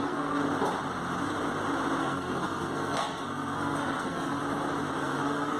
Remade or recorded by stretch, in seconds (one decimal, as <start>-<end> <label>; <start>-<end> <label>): 0.0-0.4 remade; 0.4-2.0 recorded; 2.0-4.4 remade; 4.4-5.0 recorded; 5.0-5.6 remade